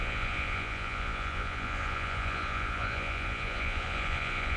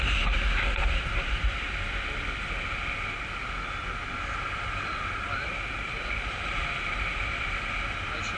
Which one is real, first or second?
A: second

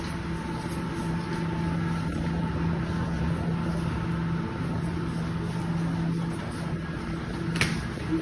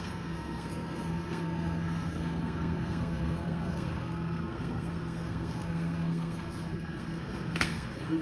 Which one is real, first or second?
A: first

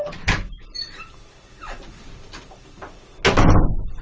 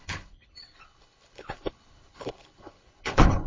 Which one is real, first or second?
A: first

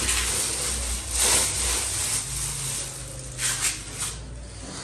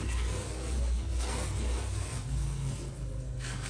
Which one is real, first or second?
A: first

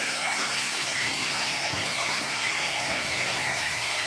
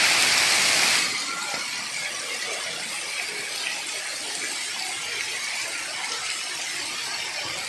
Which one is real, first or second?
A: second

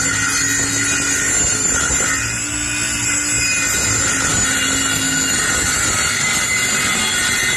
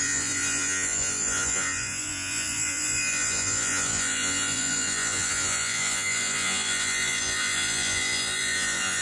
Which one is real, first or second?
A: first